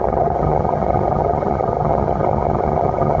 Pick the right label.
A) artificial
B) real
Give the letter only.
A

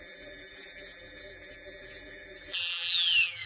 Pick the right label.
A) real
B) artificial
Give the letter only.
B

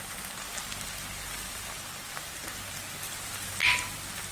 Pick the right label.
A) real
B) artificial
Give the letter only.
A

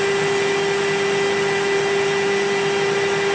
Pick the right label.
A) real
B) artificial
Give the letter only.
A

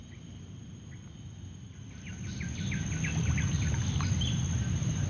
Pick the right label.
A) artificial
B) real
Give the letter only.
B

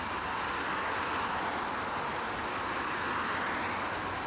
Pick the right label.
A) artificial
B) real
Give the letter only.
B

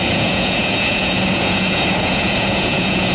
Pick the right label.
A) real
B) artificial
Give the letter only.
B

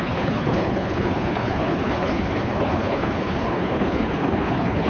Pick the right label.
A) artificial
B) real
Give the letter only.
A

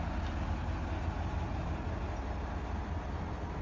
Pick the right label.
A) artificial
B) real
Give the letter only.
B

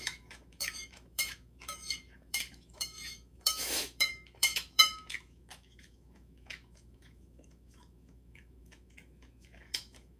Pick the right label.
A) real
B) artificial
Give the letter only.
B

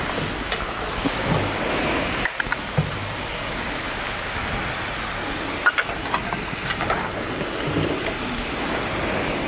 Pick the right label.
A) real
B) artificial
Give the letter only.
A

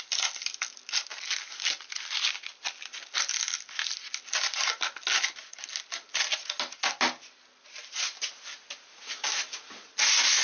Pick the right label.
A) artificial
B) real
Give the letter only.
B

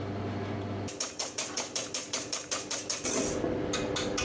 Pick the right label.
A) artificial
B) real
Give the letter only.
B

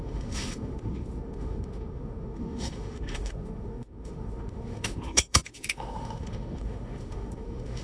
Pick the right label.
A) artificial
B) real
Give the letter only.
A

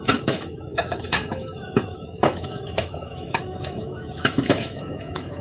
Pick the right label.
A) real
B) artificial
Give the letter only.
B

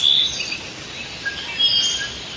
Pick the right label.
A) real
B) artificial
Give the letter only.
B